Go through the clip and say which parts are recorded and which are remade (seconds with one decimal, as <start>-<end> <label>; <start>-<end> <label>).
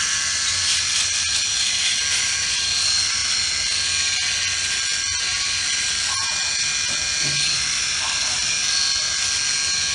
0.0-1.5 recorded; 1.5-2.0 remade; 2.0-9.9 recorded